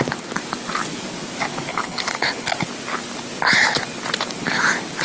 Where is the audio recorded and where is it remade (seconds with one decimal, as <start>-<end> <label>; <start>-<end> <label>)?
0.0-1.7 recorded; 1.7-2.5 remade; 2.5-5.0 recorded